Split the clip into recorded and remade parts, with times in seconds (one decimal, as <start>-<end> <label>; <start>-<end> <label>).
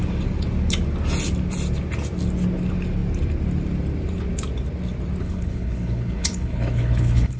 0.0-5.2 recorded; 5.2-7.4 remade